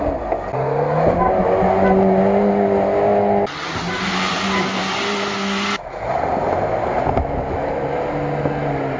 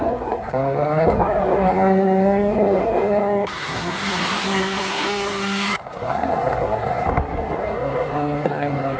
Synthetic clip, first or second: second